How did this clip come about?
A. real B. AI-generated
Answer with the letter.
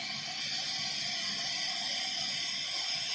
A